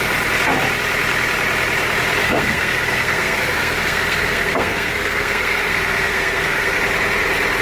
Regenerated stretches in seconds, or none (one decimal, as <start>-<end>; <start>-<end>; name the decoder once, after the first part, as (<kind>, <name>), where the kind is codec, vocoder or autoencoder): 2.2-6.8 (codec, SNAC)